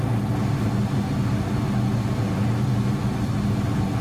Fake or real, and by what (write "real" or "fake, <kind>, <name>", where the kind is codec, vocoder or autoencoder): real